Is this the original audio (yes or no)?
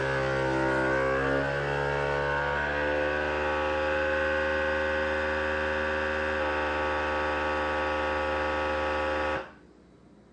yes